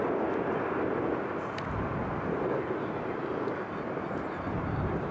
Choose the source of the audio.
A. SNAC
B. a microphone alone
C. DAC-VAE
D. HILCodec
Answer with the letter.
B